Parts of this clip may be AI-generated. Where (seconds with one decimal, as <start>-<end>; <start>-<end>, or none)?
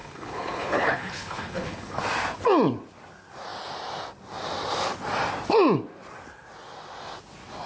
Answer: 0.0-2.0